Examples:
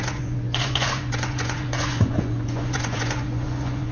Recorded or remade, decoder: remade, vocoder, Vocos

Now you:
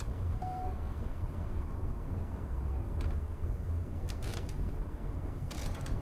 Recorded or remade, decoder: remade, codec, SNAC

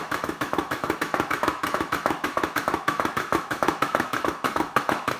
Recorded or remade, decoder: remade, autoencoder, DAC-VAE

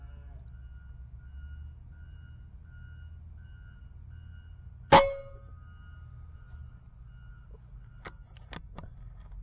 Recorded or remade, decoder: recorded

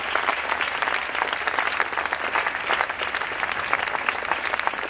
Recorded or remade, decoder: recorded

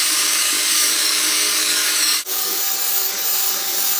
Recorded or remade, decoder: remade, codec, DAC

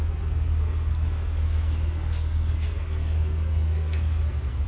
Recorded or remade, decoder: remade, codec, SNAC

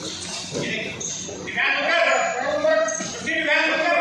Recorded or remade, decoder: remade, vocoder, BigVGAN v2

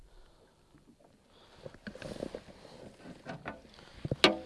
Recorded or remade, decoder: recorded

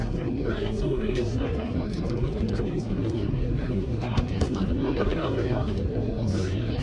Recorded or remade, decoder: remade, codec, SNAC